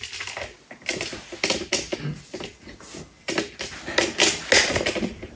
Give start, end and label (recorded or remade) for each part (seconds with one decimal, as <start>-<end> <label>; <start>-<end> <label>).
0.0-5.4 recorded